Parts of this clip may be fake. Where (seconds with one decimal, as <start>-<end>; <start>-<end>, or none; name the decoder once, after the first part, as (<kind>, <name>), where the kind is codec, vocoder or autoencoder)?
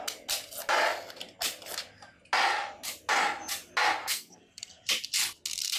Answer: 4.0-4.8 (codec, SNAC)